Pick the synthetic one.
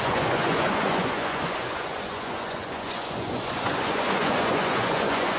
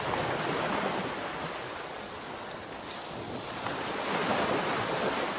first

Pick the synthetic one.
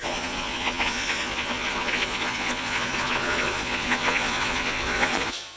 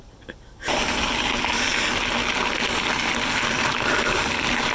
first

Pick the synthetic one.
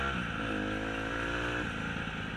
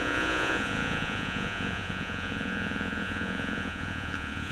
second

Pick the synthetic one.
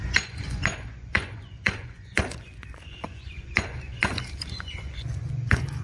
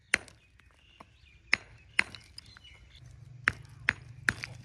first